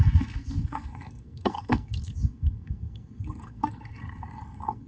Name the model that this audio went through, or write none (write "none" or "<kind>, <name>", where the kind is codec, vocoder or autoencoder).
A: codec, SNAC